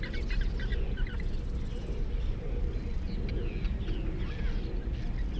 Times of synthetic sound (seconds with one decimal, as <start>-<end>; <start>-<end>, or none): none